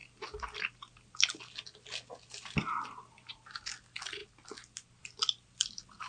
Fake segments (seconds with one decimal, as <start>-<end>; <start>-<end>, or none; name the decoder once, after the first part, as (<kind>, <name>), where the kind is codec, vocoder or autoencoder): none